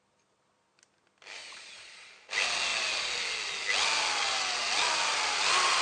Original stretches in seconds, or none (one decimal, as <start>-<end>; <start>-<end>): 0.0-1.4; 2.1-5.8